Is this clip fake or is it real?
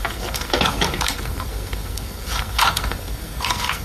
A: fake